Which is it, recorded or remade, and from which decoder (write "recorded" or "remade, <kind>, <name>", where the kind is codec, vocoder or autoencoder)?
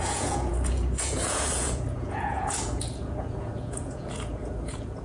remade, vocoder, Vocos